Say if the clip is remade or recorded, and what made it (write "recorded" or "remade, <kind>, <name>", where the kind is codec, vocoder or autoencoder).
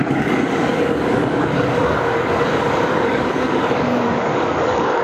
remade, codec, DAC